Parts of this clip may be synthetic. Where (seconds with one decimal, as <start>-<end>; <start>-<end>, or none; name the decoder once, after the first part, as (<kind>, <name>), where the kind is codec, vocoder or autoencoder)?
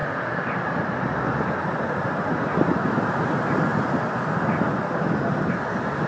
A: none